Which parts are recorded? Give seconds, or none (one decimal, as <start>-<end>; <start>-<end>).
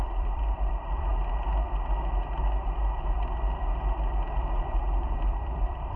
1.1-4.7